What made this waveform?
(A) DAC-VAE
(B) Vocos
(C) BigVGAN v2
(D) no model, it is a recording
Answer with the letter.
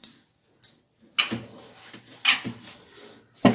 D